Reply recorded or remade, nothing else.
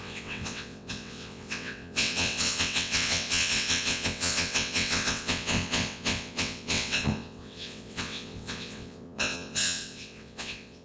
remade